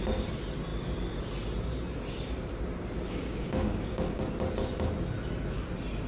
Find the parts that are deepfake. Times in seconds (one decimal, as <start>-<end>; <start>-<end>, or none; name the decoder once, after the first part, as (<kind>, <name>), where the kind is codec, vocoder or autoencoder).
3.1-4.3 (codec, DAC)